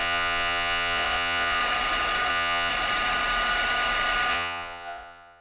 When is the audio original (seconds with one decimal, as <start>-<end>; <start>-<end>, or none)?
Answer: 1.6-2.3; 2.7-4.3